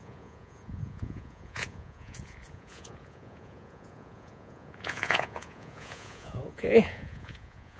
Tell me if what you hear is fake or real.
fake